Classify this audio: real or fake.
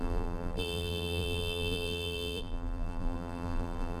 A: fake